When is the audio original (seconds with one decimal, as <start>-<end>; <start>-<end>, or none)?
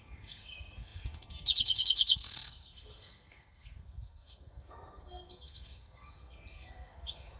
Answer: none